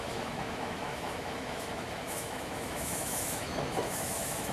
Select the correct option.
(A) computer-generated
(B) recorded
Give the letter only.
A